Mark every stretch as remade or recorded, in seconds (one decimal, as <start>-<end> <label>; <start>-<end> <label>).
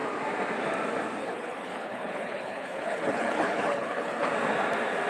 0.0-1.2 recorded; 1.2-4.3 remade; 4.3-5.1 recorded